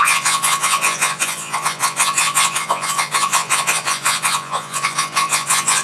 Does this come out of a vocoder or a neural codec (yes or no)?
yes